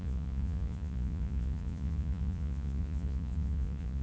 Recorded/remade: remade